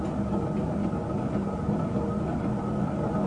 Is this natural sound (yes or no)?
yes